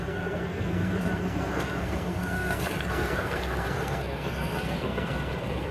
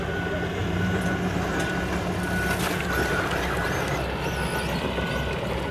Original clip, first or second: second